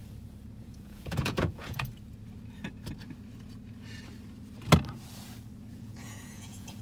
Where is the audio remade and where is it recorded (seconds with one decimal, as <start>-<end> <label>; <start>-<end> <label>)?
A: 0.0-0.6 recorded; 0.6-1.9 remade; 1.9-5.7 recorded; 5.7-6.8 remade